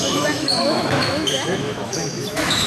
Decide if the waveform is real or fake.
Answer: fake